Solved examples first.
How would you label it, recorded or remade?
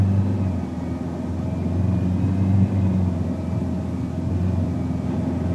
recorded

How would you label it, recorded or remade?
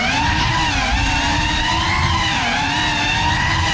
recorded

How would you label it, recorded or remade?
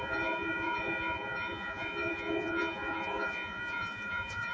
remade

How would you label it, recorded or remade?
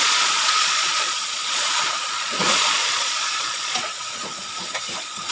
remade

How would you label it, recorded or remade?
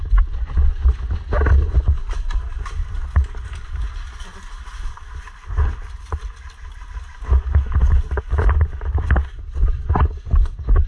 recorded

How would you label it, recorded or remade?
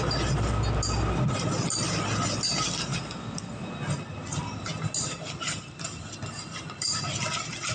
recorded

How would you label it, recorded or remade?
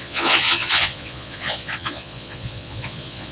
remade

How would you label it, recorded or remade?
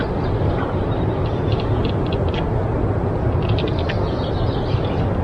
recorded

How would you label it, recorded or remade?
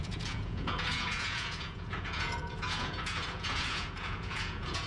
remade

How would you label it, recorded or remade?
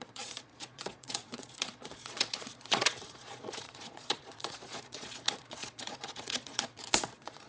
remade